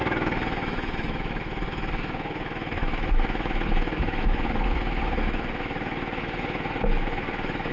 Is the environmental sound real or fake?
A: fake